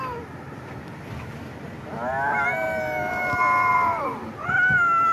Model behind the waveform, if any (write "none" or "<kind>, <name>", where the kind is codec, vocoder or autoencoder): none